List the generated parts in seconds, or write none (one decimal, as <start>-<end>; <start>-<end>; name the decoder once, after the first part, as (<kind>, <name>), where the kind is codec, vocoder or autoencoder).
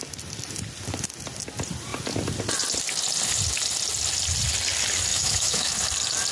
5.1-5.7 (autoencoder, DAC-VAE)